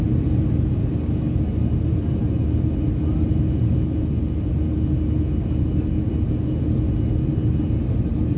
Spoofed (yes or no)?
no